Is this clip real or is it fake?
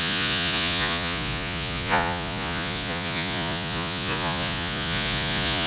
fake